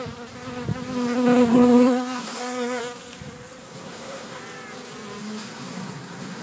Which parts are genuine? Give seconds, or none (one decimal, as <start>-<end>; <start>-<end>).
0.0-1.5; 2.8-3.6; 4.4-5.2